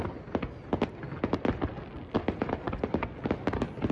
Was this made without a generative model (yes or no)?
yes